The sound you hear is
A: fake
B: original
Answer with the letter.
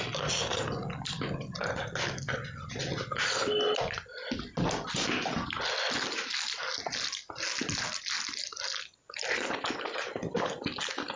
B